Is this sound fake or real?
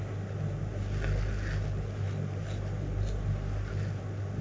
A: real